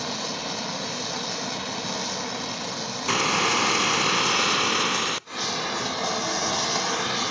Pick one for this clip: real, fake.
real